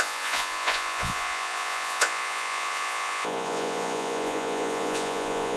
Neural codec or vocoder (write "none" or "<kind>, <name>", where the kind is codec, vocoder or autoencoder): vocoder, Vocos